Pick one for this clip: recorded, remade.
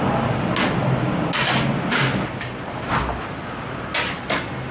recorded